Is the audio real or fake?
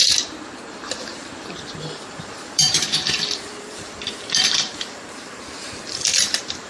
fake